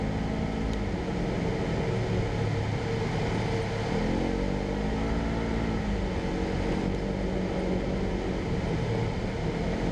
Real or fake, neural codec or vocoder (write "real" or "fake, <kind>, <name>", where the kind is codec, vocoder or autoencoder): real